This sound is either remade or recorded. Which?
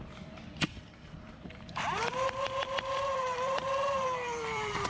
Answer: remade